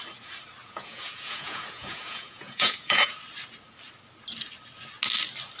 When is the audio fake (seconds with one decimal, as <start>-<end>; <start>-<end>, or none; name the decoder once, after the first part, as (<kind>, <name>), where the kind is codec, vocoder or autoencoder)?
0.6-3.1 (vocoder, Vocos)